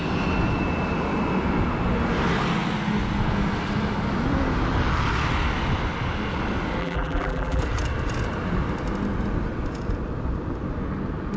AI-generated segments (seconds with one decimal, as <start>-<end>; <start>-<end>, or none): 6.8-7.6